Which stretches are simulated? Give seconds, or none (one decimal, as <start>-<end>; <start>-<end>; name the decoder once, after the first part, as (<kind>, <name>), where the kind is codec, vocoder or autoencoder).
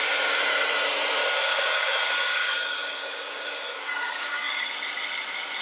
1.2-4.6 (codec, DAC)